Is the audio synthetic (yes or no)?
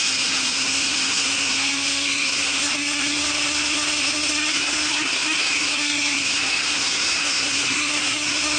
yes